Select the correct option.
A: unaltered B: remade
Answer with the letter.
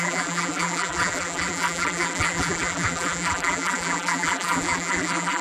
B